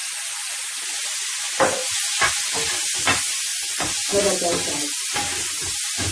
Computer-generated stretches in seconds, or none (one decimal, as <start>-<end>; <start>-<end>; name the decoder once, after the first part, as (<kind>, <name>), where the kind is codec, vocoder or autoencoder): 0.0-1.4 (vocoder, BigVGAN v2); 3.3-5.2

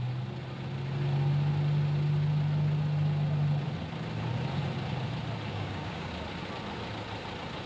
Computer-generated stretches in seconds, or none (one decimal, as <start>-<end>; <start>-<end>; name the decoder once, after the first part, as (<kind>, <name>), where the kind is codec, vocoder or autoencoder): 5.5-6.1 (codec, DAC)